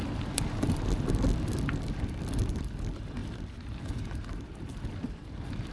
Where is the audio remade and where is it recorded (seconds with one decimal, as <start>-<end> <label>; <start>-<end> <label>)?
0.0-3.2 remade; 3.2-4.3 recorded; 4.3-5.7 remade